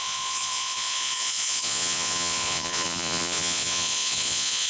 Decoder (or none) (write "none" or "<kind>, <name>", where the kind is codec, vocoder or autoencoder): vocoder, Vocos